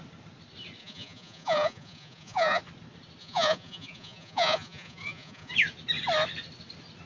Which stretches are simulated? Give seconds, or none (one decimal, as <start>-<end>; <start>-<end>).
0.8-2.6; 3.2-5.5